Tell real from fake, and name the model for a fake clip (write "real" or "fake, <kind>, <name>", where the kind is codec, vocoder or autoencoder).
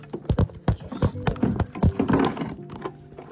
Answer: real